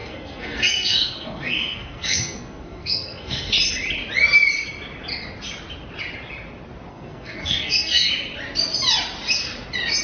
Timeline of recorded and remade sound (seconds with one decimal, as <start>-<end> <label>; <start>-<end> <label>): 0.0-3.5 remade; 3.5-6.9 recorded; 6.9-8.1 remade; 8.1-10.0 recorded